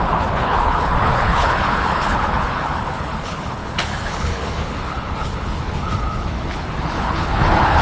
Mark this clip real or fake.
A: fake